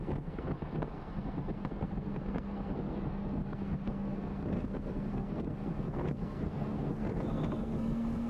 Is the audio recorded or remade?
remade